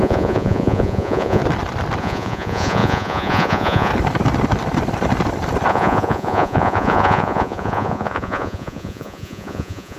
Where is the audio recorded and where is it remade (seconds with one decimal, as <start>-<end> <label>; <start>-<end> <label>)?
0.0-1.4 remade; 1.4-2.0 recorded; 2.0-3.9 remade; 3.9-5.7 recorded; 5.7-10.0 remade